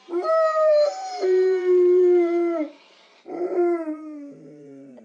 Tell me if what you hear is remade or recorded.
remade